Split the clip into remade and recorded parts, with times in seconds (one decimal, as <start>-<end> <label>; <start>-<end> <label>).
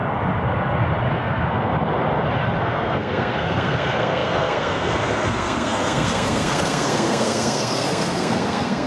0.0-1.1 recorded; 1.1-1.7 remade; 1.7-2.6 recorded; 2.6-8.9 remade